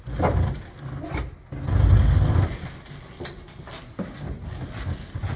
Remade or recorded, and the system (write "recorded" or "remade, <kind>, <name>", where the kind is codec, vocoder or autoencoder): recorded